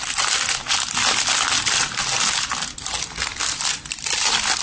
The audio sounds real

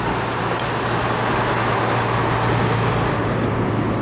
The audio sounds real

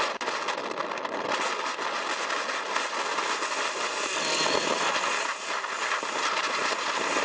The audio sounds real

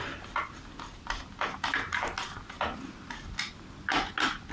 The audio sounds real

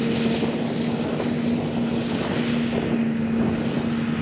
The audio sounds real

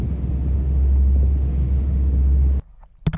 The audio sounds real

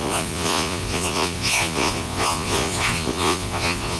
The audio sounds fake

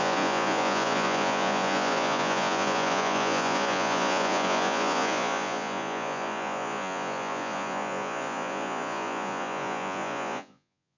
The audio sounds fake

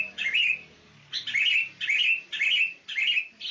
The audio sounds real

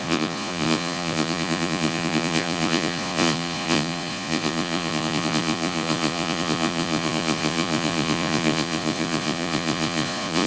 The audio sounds fake